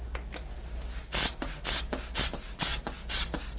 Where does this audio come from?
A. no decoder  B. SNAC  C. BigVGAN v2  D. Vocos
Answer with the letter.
A